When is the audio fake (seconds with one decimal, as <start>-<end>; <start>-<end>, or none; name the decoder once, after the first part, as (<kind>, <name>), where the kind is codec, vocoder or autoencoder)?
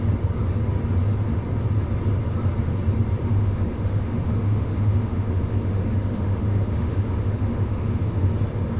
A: 3.2-8.3 (autoencoder, DAC-VAE)